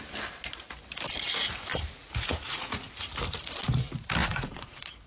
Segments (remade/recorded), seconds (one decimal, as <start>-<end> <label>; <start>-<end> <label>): 0.0-2.0 recorded; 2.0-2.8 remade; 2.8-4.2 recorded; 4.2-5.1 remade